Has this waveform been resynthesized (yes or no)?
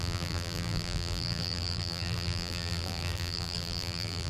yes